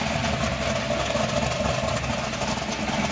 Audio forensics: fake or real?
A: real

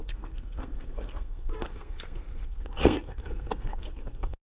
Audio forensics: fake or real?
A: fake